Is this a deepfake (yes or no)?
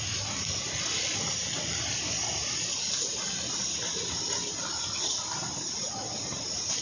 no